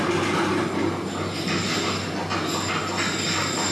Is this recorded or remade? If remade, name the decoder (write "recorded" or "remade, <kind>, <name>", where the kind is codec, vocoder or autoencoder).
recorded